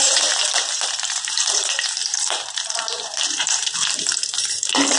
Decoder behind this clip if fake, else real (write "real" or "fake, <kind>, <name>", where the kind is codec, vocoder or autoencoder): fake, vocoder, BigVGAN v2